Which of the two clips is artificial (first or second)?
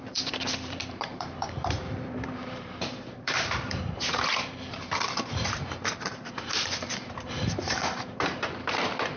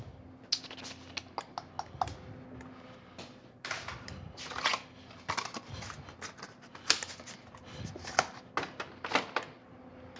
first